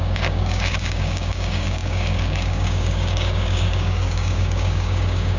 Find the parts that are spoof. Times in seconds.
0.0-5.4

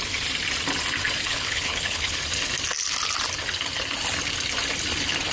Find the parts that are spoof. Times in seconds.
1.3-2.2

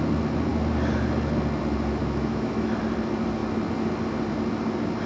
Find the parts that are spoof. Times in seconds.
2.0-2.8

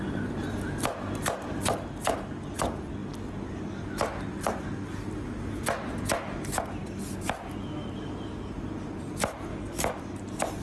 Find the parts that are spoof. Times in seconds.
9.5-10.0

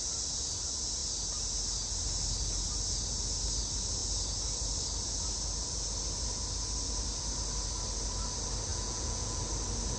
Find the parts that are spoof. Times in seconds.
8.7-9.4

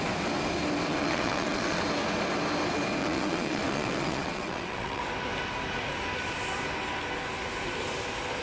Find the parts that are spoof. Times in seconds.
0.9-1.8; 3.0-5.0

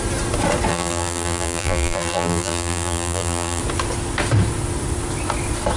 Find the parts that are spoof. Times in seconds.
0.7-3.6

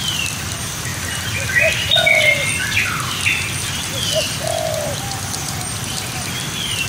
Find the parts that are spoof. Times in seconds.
none